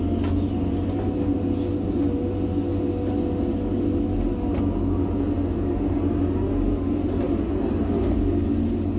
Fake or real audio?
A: real